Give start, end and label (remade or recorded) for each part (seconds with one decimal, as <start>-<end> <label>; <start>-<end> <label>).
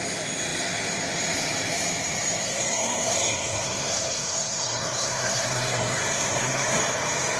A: 0.0-2.4 recorded; 2.4-6.8 remade; 6.8-7.4 recorded